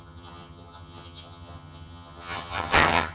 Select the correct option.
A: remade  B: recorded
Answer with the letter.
A